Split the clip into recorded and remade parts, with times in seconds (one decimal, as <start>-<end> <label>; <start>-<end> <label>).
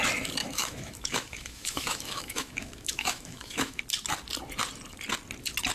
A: 0.0-0.4 recorded; 0.4-3.8 remade; 3.8-5.7 recorded